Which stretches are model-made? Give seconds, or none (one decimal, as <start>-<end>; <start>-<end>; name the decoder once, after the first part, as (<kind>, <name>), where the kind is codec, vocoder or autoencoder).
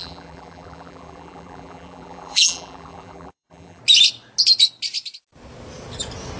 0.0-3.8 (vocoder, BigVGAN v2)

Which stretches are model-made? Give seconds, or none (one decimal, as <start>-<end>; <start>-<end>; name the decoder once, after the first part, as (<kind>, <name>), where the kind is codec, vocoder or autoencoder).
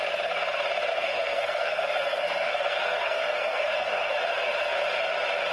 0.9-4.2 (codec, SNAC)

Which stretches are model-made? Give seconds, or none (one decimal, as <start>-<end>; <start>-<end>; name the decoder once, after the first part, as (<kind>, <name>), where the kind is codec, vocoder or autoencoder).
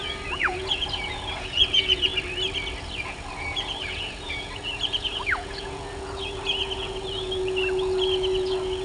0.0-2.1 (vocoder, Vocos); 2.8-8.8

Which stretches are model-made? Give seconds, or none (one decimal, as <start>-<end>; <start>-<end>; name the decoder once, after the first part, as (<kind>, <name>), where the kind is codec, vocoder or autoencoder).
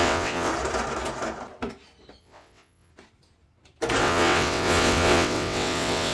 0.0-0.5 (vocoder, WaveNeXt); 2.2-2.9; 4.0-6.1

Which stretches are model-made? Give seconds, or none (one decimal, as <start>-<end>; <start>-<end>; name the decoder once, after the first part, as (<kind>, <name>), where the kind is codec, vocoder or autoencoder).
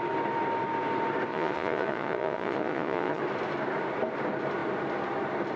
1.3-3.2 (vocoder, Vocos)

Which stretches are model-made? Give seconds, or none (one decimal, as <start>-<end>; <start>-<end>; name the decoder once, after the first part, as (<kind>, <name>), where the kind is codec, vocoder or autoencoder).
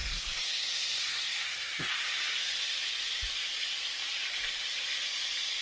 0.0-2.0 (codec, SNAC)